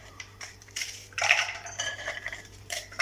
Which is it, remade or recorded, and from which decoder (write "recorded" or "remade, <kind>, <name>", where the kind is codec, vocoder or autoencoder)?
remade, vocoder, BigVGAN v2